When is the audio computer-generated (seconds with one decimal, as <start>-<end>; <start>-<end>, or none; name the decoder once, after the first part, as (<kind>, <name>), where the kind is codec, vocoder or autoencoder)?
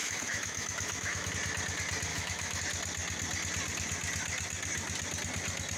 0.0-1.3 (autoencoder, DAC-VAE); 2.1-2.6